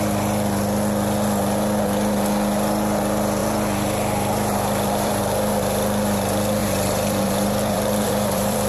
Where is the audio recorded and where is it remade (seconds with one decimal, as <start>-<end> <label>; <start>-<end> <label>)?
0.0-3.4 recorded; 3.4-5.2 remade; 5.2-6.6 recorded; 6.6-8.7 remade